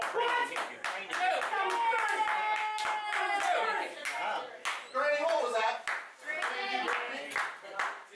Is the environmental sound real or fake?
real